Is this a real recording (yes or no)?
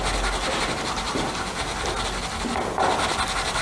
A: yes